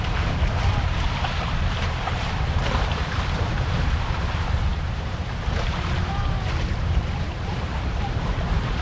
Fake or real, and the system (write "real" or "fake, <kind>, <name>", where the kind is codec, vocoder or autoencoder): fake, vocoder, BigVGAN v2